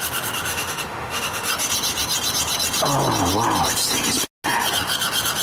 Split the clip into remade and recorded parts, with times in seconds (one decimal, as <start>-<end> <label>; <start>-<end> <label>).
0.0-0.5 recorded; 0.5-1.5 remade; 1.5-5.4 recorded